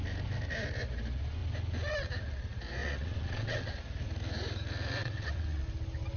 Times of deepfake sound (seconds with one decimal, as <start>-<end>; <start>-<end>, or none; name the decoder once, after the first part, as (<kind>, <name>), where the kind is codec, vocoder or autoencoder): 2.8-3.7 (vocoder, WaveNeXt); 5.0-5.6

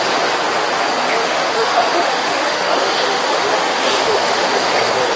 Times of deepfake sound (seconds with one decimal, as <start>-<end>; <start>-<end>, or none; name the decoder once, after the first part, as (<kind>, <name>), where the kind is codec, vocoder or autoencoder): 1.2-4.3 (autoencoder, DAC-VAE)